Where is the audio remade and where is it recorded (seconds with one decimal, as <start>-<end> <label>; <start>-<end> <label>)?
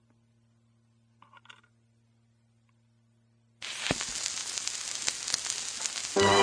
0.0-6.4 recorded